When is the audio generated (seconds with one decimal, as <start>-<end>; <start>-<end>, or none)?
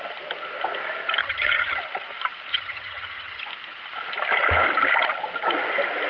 1.2-1.8; 2.5-3.4